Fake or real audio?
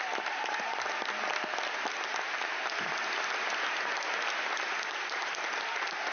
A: real